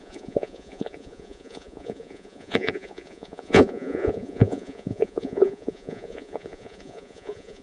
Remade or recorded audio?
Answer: remade